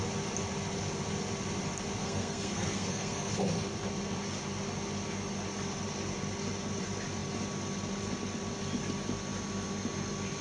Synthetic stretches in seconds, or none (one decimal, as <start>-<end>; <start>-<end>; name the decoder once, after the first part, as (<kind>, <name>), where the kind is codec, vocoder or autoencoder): 2.0-3.3 (codec, SNAC)